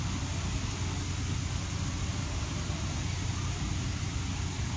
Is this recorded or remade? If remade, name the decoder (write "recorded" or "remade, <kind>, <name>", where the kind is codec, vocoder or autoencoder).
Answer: recorded